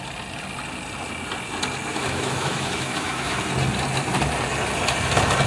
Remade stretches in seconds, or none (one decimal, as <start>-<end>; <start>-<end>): 1.9-3.4